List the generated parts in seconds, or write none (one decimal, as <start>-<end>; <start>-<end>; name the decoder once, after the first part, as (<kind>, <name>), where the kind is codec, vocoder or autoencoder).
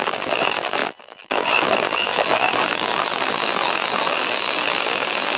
0.0-5.4 (vocoder, BigVGAN v2)